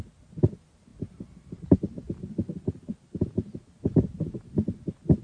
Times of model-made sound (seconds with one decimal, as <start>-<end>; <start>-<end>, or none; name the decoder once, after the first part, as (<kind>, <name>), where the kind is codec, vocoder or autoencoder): none